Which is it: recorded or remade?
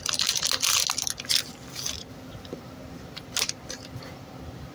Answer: recorded